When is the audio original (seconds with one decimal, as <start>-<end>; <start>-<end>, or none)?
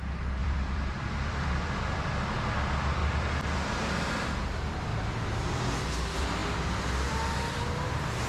0.0-0.4; 2.3-3.0; 3.8-4.9; 5.8-8.3